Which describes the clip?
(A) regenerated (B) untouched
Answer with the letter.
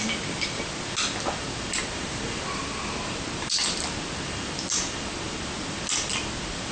B